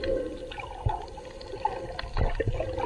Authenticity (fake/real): real